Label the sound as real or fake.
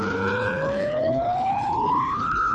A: fake